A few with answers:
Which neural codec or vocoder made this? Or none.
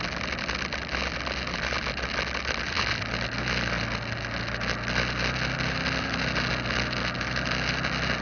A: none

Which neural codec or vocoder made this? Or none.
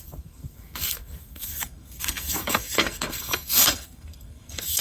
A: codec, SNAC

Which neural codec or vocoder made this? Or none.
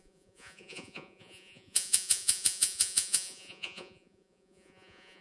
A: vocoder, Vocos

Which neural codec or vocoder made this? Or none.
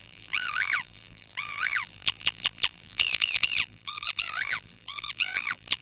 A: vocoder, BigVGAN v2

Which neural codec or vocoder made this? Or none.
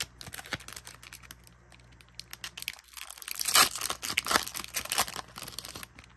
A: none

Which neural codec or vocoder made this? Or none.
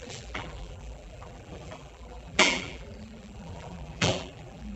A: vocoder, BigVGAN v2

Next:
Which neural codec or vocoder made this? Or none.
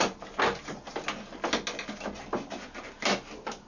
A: none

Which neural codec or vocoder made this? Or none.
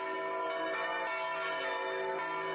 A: none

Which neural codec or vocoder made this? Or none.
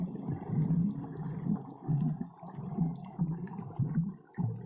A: none